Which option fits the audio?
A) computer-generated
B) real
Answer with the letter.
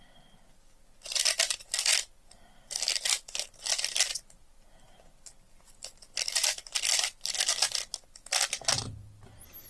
B